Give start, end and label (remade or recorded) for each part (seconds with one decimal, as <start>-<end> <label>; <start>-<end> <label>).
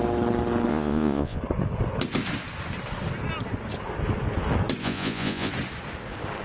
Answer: 0.0-0.7 recorded; 0.7-1.4 remade; 1.4-4.8 recorded; 4.8-5.5 remade; 5.5-6.4 recorded